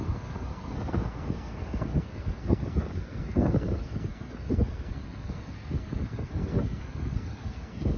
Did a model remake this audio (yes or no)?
yes